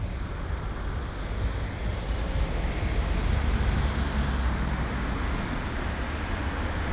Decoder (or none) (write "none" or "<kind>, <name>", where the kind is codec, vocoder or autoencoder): none